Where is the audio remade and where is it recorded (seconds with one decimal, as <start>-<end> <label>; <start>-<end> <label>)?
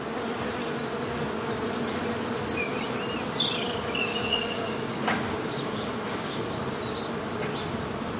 0.0-4.1 recorded; 4.1-6.8 remade; 6.8-8.2 recorded